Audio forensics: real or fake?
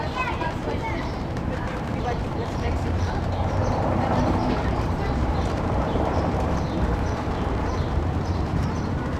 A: fake